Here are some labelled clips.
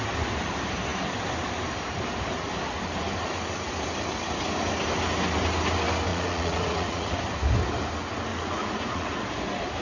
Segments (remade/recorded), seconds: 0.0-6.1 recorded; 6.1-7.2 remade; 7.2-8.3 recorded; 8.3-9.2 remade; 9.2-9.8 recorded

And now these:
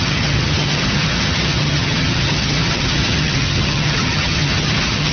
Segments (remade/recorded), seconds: 0.0-5.1 remade